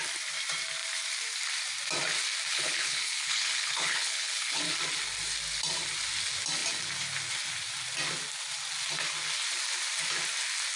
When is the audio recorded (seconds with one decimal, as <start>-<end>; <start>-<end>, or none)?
0.0-2.5; 4.6-10.8